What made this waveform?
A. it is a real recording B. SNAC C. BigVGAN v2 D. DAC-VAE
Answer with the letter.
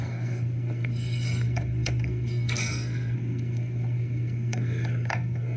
B